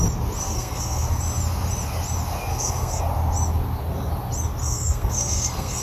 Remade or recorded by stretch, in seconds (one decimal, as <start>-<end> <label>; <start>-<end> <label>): 0.0-0.4 recorded; 0.4-1.2 remade; 1.2-2.5 recorded; 2.5-3.0 remade; 3.0-4.6 recorded; 4.6-5.8 remade